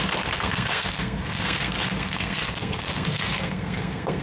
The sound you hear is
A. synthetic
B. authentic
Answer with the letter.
A